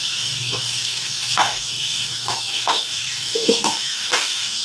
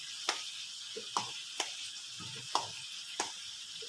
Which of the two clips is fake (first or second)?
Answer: first